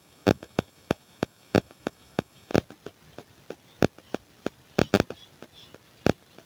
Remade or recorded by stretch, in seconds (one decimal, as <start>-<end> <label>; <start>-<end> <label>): 0.0-2.5 remade; 2.5-6.5 recorded